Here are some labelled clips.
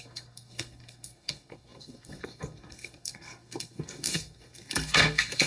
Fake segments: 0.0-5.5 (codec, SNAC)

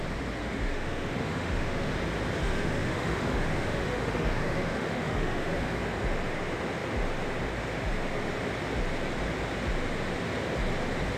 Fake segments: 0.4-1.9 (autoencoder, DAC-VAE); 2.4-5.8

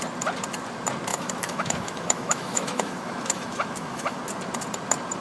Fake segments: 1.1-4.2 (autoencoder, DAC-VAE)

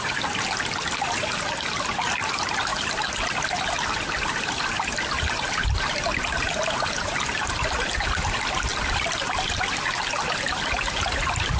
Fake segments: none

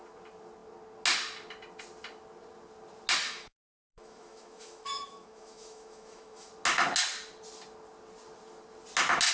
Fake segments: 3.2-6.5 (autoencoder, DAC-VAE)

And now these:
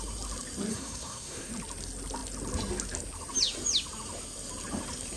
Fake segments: 0.7-1.5 (codec, SNAC)